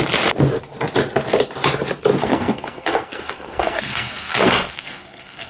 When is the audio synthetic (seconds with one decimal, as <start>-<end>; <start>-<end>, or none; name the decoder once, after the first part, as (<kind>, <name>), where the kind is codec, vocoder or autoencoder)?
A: 2.2-5.5 (codec, SNAC)